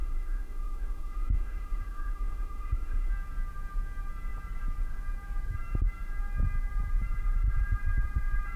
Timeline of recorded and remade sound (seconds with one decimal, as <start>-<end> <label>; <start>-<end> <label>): 0.0-3.1 remade; 3.1-8.6 recorded